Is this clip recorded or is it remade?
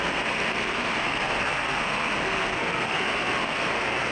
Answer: remade